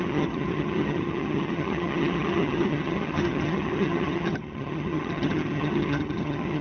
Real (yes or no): no